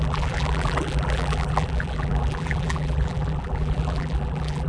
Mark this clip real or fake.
fake